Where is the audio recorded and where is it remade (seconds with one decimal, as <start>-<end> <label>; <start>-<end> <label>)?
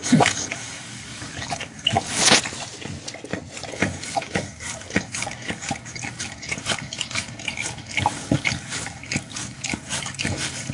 0.0-2.2 remade; 2.2-3.7 recorded; 3.7-10.7 remade